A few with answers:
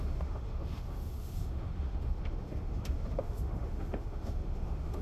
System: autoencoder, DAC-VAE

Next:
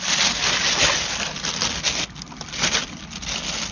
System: none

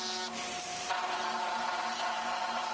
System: none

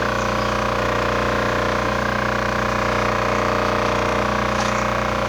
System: autoencoder, DAC-VAE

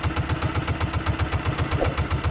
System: none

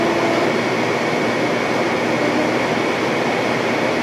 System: none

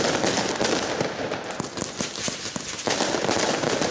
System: none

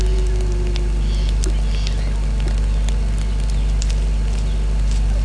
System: none